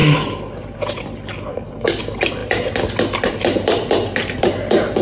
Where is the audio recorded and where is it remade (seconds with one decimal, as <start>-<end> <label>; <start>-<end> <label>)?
0.0-1.5 recorded; 1.5-2.0 remade; 2.0-5.0 recorded